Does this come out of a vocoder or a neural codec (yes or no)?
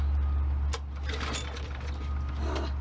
no